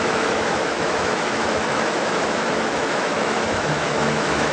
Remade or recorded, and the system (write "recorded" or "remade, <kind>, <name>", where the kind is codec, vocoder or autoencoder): remade, autoencoder, DAC-VAE